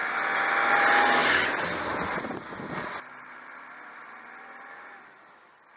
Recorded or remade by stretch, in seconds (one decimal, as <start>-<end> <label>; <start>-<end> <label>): 0.0-0.7 recorded; 0.7-1.2 remade; 1.2-3.0 recorded; 3.0-5.8 remade